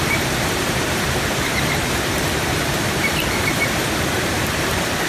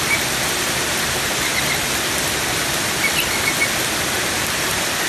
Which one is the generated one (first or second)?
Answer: first